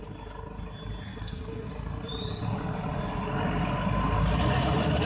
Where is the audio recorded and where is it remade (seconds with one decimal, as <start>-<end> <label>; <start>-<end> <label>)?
0.0-1.1 recorded; 1.1-1.7 remade; 1.7-5.1 recorded